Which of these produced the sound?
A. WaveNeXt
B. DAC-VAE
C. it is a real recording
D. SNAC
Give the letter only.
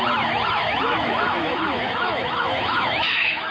B